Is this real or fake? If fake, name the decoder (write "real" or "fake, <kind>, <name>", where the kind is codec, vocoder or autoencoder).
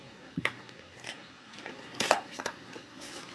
fake, codec, SNAC